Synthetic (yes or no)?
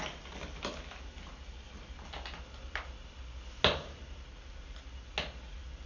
no